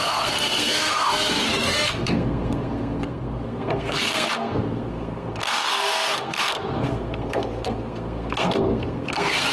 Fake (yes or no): yes